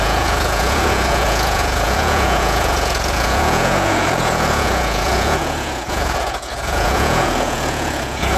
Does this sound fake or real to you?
fake